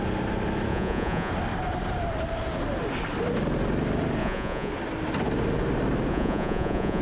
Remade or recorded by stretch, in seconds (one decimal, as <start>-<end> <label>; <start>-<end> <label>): 0.0-0.7 recorded; 0.7-1.3 remade; 1.3-4.2 recorded; 4.2-4.7 remade; 4.7-6.1 recorded; 6.1-7.0 remade